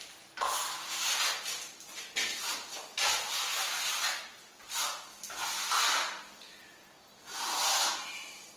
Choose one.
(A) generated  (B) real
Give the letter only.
B